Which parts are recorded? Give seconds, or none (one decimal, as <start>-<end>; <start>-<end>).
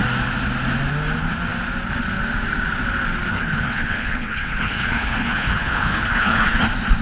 0.0-3.3; 6.6-7.0